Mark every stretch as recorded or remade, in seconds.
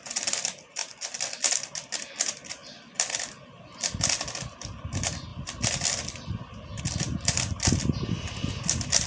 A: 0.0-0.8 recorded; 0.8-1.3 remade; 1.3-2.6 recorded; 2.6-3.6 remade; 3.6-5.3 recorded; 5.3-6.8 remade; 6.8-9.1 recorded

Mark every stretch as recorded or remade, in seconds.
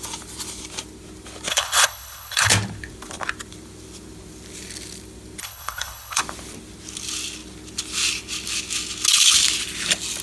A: 0.0-1.5 recorded; 1.5-2.5 remade; 2.5-5.4 recorded; 5.4-6.2 remade; 6.2-10.2 recorded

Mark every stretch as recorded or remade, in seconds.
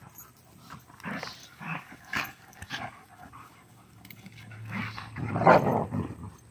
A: 0.0-1.4 recorded; 1.4-5.3 remade; 5.3-6.5 recorded